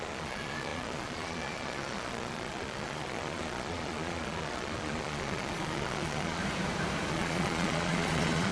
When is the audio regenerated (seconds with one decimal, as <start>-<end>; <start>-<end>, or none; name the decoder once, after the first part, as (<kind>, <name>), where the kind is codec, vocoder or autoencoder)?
0.0-6.4 (vocoder, Vocos); 7.1-8.5